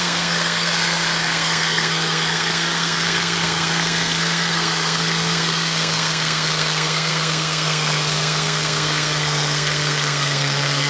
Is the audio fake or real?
fake